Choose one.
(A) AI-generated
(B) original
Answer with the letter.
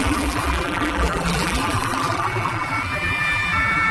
A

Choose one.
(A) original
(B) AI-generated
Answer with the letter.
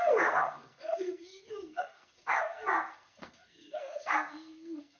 B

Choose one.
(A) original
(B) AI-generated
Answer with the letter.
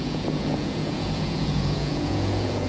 B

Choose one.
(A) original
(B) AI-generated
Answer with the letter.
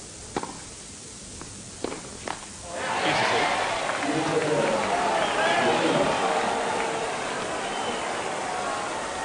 A